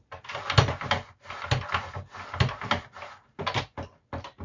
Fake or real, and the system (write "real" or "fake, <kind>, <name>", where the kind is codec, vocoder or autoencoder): real